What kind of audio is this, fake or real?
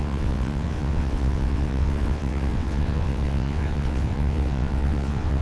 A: fake